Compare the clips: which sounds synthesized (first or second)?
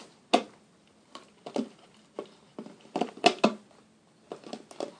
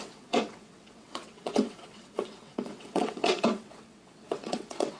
second